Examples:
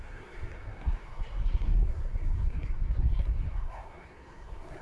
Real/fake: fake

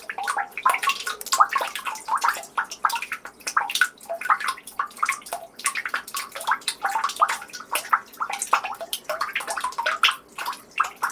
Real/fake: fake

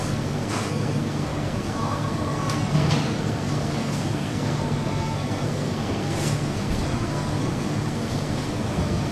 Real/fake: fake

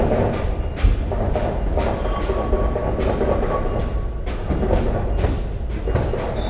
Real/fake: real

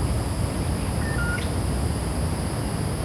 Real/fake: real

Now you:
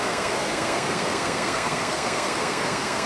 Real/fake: fake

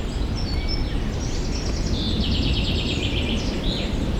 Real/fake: real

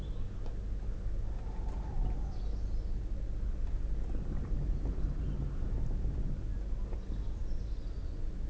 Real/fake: real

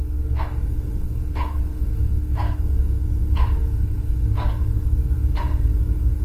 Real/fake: fake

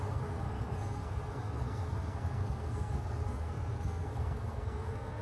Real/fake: fake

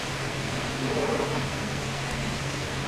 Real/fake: fake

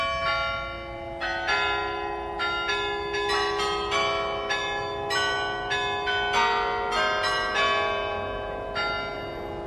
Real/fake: real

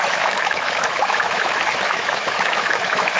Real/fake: fake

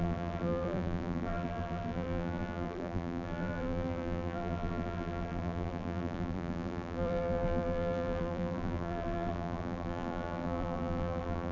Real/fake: fake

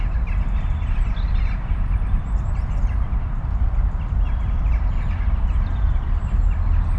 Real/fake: real